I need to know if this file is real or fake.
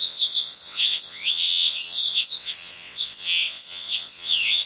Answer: fake